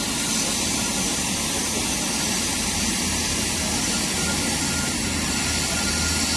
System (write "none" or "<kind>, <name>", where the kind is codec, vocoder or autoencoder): none